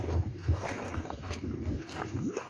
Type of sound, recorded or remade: remade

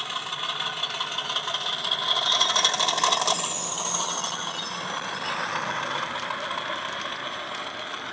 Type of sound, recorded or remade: recorded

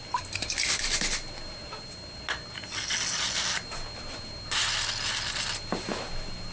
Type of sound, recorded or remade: recorded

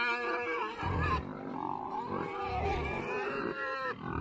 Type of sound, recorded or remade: recorded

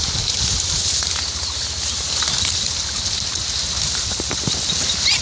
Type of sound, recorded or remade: recorded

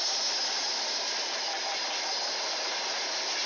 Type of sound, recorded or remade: recorded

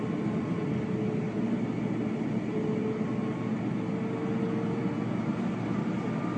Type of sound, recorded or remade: recorded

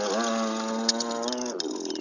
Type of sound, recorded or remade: recorded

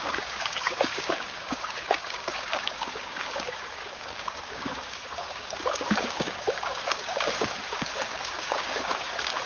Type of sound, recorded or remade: remade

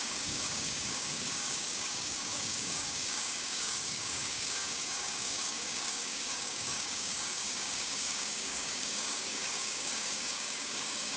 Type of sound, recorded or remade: remade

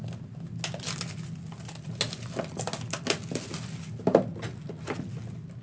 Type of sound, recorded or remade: recorded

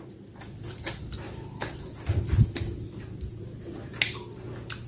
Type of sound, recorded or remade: recorded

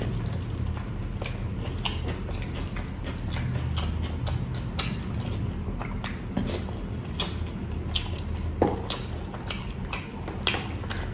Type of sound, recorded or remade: recorded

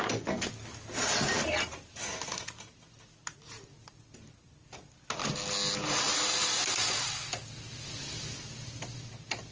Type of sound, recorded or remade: recorded